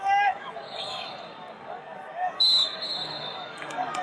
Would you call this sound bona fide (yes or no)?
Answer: no